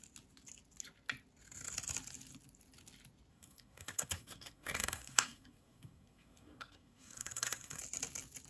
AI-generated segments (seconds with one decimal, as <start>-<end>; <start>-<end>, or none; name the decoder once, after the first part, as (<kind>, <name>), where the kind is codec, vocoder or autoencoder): 3.3-7.8 (codec, SNAC)